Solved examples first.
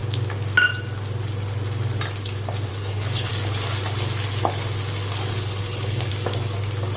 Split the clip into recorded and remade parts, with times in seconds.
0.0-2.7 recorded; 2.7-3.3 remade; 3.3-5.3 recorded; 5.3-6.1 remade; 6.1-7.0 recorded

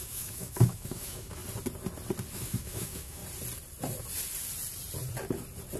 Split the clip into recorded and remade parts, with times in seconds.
0.0-1.4 remade; 1.4-2.3 recorded; 2.3-3.2 remade; 3.2-5.8 recorded

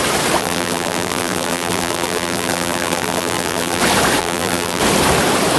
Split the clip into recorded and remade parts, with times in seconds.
0.0-0.4 recorded; 0.4-3.8 remade; 3.8-4.2 recorded; 4.2-4.8 remade; 4.8-5.6 recorded

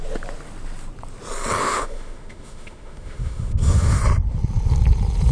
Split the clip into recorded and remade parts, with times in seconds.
0.0-1.6 recorded; 1.6-4.0 remade; 4.0-5.3 recorded